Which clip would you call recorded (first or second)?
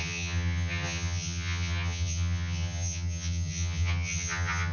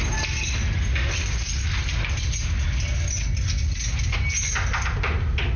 second